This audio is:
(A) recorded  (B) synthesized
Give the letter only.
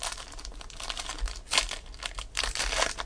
A